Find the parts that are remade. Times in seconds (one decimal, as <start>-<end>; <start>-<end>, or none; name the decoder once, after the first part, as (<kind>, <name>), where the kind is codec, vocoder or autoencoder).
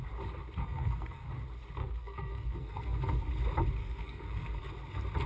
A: 0.6-1.3 (codec, SNAC); 1.8-3.2; 3.8-4.7